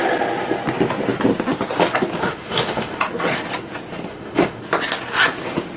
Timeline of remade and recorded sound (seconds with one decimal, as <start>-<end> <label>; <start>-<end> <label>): 0.0-2.2 recorded; 2.2-3.0 remade; 3.0-4.1 recorded; 4.1-4.6 remade; 4.6-5.8 recorded